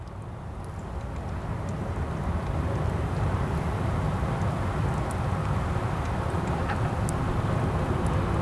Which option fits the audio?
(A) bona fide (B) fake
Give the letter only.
A